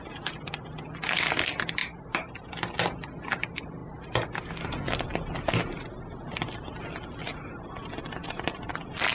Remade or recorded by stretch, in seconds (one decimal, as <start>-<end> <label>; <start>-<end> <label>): 0.0-1.8 recorded; 1.8-2.5 remade; 2.5-8.2 recorded; 8.2-8.7 remade; 8.7-9.1 recorded